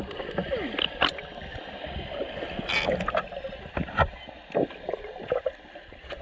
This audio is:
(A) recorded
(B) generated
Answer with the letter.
A